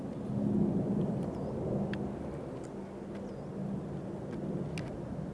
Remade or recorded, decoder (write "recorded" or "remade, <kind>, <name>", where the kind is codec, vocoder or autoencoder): recorded